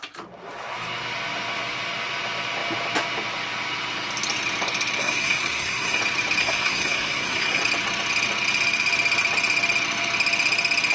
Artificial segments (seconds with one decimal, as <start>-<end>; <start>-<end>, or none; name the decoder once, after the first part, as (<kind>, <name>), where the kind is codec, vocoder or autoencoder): 5.0-6.0 (codec, SNAC); 6.4-7.6